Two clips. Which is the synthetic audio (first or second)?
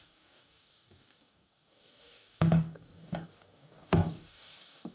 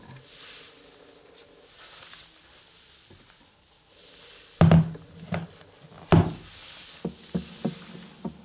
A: first